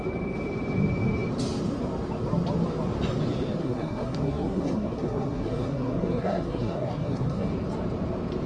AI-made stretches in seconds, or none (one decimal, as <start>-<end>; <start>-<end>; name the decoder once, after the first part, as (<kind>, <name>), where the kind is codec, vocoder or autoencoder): 3.6-7.5 (codec, SNAC)